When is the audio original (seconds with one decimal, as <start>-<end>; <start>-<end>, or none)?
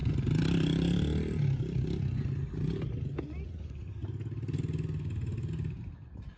0.0-6.4